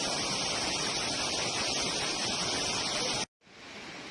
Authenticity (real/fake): real